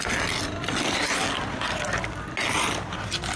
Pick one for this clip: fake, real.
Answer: real